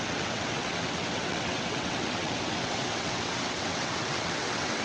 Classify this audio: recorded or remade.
remade